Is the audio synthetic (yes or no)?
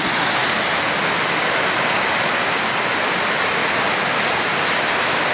no